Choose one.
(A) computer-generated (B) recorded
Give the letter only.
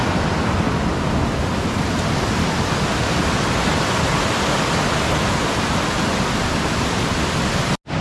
B